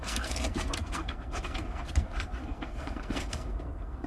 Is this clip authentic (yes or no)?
no